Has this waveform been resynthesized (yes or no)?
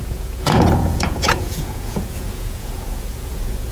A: yes